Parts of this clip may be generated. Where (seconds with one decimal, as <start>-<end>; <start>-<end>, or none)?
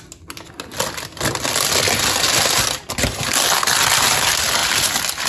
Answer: none